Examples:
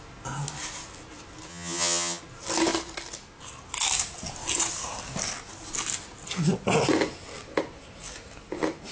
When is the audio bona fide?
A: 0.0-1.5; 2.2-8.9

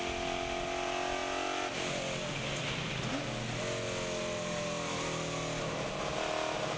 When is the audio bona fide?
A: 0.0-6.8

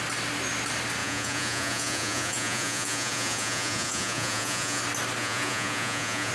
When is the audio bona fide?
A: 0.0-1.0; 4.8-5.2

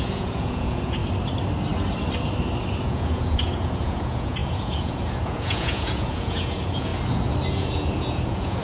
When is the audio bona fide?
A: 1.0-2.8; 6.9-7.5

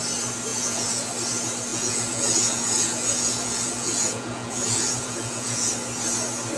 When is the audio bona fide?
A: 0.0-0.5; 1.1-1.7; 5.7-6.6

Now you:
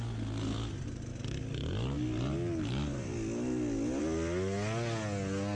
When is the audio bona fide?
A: 0.0-5.5

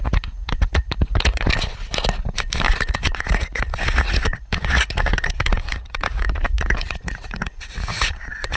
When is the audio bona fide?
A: 1.5-2.9